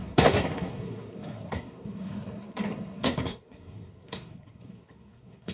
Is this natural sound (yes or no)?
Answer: no